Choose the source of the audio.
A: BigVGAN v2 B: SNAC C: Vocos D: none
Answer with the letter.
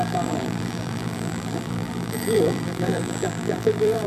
A